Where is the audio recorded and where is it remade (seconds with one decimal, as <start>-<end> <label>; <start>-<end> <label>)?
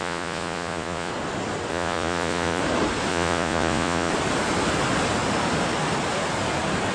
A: 0.0-1.1 remade; 1.1-1.7 recorded; 1.7-2.6 remade; 2.6-3.1 recorded; 3.1-4.1 remade; 4.1-6.9 recorded